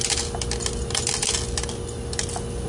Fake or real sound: real